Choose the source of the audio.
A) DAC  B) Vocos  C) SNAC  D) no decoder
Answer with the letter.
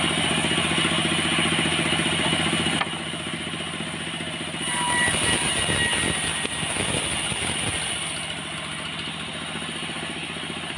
D